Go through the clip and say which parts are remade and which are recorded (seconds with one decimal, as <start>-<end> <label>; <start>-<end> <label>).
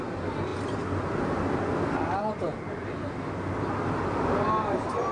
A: 0.0-5.1 recorded